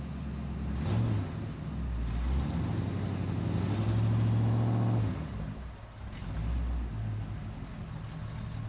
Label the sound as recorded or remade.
recorded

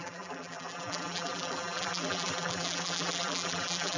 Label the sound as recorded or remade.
remade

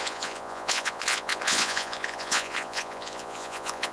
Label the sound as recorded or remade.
remade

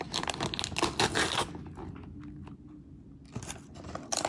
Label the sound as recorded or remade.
recorded